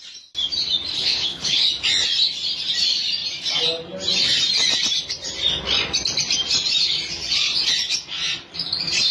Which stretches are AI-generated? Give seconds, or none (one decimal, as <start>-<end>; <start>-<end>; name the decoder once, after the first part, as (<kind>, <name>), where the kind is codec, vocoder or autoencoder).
0.9-1.7 (codec, HILCodec)